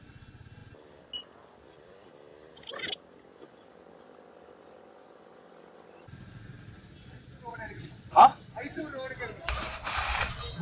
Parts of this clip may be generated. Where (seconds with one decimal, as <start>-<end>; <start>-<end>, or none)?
7.5-8.8